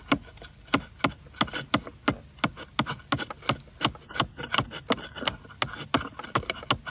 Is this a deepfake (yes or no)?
no